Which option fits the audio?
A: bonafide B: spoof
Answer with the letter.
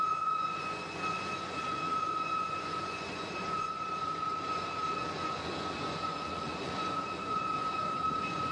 B